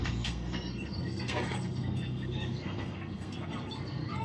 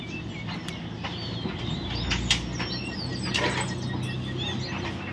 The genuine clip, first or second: second